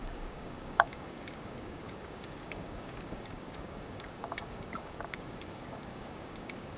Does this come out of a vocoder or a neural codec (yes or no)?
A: yes